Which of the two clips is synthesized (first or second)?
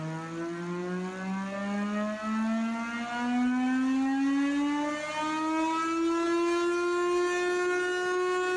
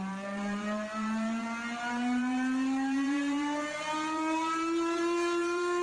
second